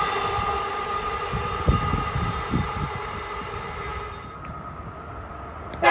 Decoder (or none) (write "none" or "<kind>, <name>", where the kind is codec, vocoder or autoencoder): none